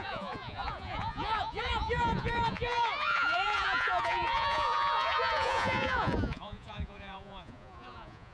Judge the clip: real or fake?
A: fake